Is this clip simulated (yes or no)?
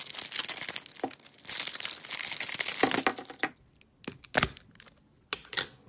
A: no